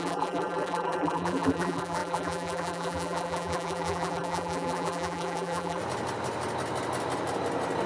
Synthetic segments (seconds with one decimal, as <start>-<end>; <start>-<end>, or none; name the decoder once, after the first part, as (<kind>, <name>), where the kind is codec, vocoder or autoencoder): 0.0-5.8 (vocoder, BigVGAN v2)